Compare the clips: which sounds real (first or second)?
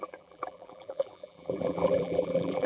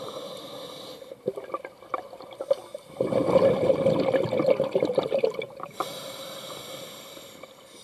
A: second